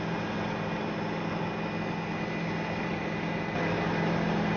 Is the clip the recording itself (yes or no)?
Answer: yes